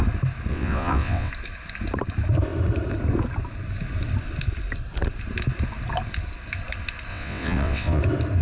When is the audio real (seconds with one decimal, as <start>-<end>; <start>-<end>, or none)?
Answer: 0.0-0.5; 1.3-7.1; 8.0-8.4